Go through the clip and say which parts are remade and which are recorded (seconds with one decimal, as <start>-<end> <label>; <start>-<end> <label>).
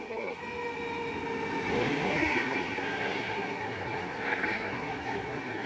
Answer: 0.0-0.4 remade; 0.4-1.7 recorded; 1.7-5.7 remade